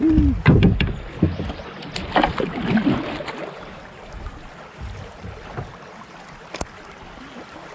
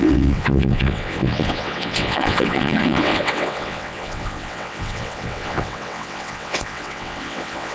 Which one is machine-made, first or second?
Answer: second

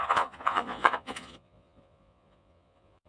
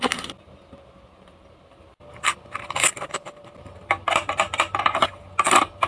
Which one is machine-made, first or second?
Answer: first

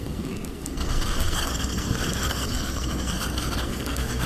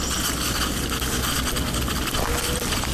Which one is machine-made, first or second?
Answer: first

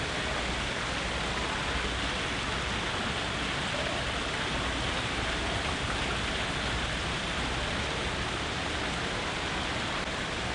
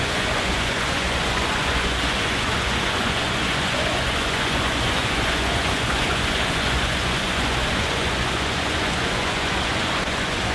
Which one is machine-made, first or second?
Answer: second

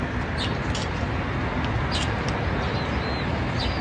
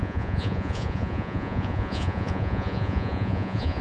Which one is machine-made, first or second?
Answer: second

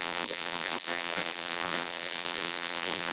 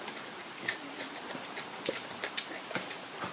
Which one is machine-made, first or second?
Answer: first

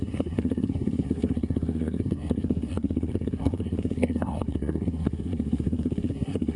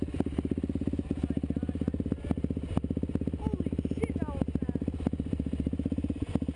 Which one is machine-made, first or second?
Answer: first